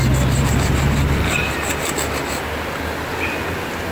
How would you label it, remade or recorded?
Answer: recorded